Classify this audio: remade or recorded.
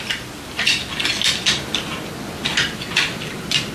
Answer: recorded